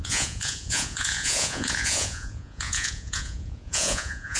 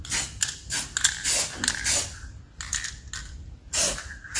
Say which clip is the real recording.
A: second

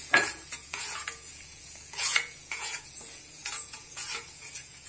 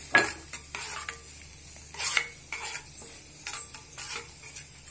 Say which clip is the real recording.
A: second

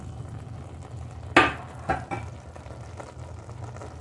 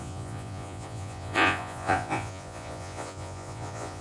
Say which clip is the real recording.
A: first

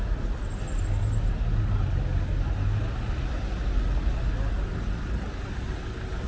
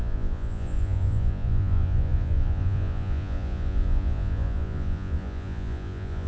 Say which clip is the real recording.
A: first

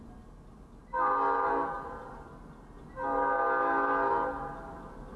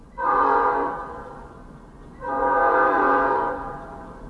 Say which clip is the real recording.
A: first